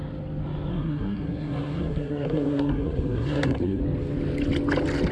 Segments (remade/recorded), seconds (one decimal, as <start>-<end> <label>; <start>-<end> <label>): 0.0-0.7 recorded; 0.7-3.8 remade; 3.8-5.1 recorded